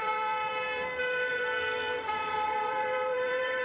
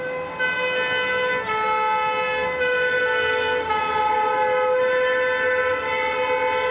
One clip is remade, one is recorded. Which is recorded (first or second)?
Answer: second